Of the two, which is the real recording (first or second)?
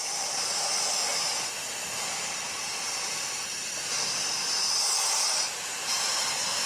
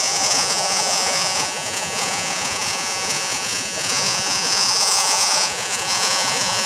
first